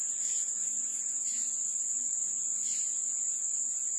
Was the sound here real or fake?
fake